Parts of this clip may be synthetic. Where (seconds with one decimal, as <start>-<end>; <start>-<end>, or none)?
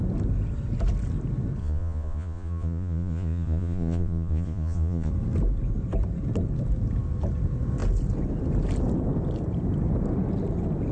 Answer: 1.6-5.1